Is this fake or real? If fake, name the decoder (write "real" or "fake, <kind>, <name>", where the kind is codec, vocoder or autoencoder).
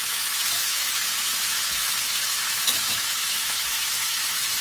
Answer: fake, autoencoder, DAC-VAE